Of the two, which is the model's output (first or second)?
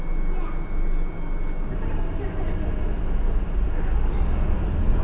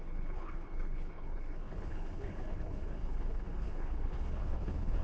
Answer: second